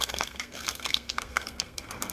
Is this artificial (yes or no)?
yes